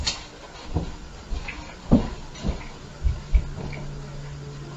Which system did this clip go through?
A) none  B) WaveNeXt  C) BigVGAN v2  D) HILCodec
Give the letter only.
A